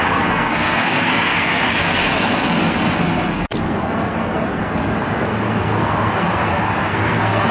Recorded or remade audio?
remade